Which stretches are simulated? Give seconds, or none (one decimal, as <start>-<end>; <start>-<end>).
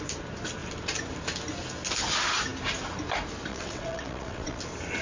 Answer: 3.5-4.6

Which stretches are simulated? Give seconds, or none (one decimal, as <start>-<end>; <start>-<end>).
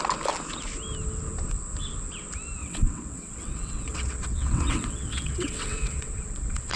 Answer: 2.6-6.8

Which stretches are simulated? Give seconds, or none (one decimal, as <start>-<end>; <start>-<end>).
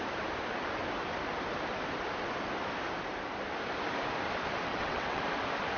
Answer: 4.7-5.2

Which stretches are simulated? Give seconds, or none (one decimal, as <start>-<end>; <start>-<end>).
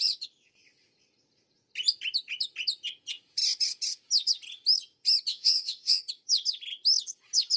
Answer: 5.3-6.0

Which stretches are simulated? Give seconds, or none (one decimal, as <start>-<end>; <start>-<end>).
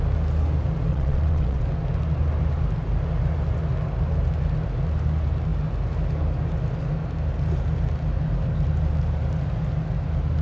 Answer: 0.9-1.6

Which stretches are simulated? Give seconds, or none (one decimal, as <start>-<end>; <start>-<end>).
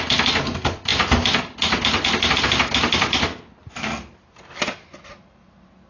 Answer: none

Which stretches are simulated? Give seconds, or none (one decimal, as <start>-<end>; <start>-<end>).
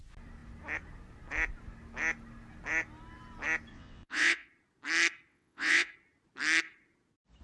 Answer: 3.7-4.5; 5.3-5.9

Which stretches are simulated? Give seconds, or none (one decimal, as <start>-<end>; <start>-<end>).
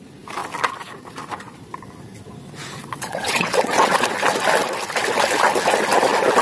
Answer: 2.8-3.9